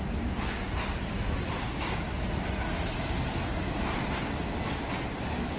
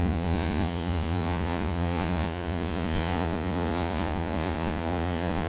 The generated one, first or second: second